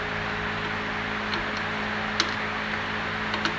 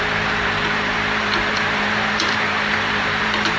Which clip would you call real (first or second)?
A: first